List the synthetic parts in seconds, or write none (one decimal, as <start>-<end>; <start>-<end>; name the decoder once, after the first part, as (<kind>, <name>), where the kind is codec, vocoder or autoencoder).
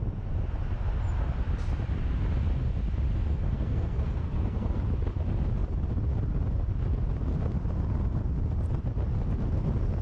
3.3-4.8 (codec, SNAC)